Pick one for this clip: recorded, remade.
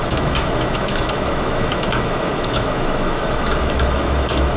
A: remade